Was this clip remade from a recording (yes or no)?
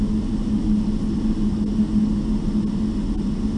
no